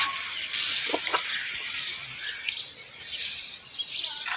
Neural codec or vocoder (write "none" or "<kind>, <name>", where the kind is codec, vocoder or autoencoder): vocoder, BigVGAN v2